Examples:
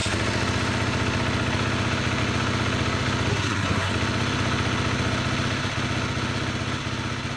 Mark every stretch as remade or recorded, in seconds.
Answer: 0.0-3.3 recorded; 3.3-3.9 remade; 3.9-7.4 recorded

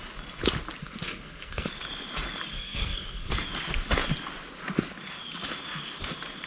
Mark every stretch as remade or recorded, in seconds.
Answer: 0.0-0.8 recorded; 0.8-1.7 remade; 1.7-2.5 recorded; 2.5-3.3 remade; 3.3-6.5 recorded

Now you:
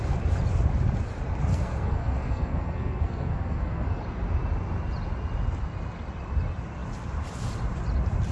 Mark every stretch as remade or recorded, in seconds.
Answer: 0.0-1.5 recorded; 1.5-4.0 remade; 4.0-8.3 recorded

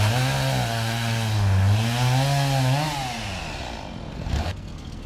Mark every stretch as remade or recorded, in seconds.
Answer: 0.0-4.1 recorded; 4.1-5.1 remade